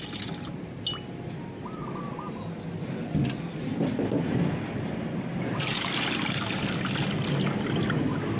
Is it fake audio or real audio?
real